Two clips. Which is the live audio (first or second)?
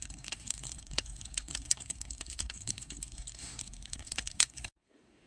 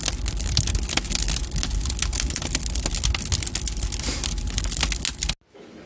second